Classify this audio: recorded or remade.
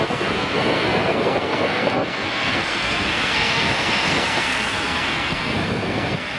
remade